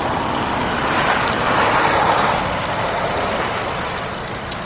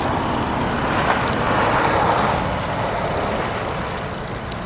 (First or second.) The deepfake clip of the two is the first